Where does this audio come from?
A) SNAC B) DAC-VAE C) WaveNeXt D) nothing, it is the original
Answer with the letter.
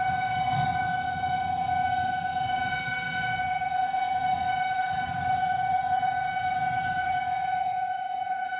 C